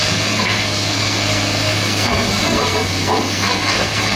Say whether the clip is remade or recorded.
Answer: remade